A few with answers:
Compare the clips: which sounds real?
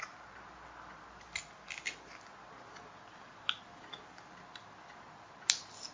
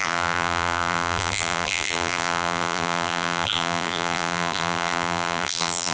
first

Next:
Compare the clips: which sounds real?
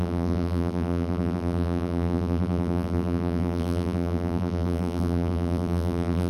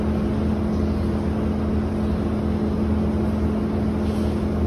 second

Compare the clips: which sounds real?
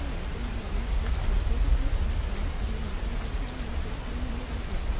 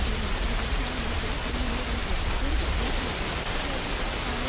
first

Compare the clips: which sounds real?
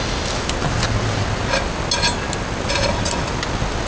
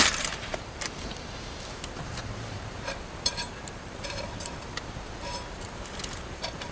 first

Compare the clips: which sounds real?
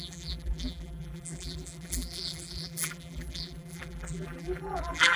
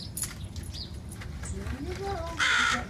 second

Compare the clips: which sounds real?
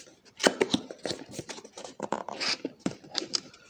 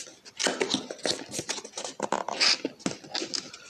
second